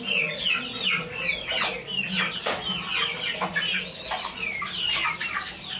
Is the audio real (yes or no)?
yes